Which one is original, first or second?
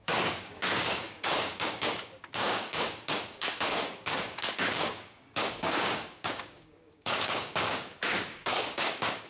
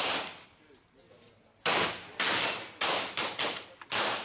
second